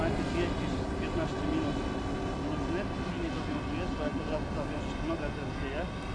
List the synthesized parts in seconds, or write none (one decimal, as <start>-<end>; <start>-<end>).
none